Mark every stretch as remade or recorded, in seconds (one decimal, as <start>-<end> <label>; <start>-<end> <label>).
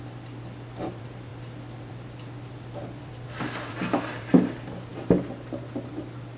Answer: 0.0-1.3 remade; 1.3-1.9 recorded; 1.9-4.9 remade; 4.9-6.4 recorded